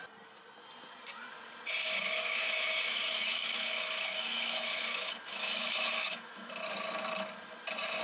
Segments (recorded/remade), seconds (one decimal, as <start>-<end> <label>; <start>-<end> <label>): 0.0-2.0 recorded; 2.0-6.5 remade; 6.5-8.0 recorded